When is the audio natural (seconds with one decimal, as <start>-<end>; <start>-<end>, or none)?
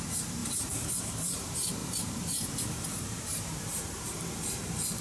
none